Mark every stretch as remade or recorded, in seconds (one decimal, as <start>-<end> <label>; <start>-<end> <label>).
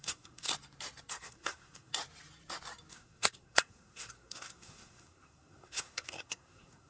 0.0-0.5 remade; 0.5-1.1 recorded; 1.1-1.9 remade; 1.9-2.9 recorded; 2.9-6.9 remade